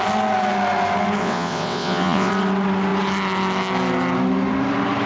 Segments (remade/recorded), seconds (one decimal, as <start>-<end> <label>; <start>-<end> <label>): 0.0-1.2 recorded; 1.2-2.3 remade; 2.3-5.1 recorded